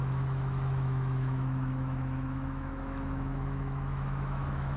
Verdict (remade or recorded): remade